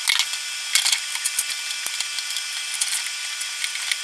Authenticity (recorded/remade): recorded